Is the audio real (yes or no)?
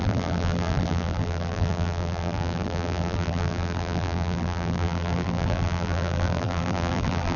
no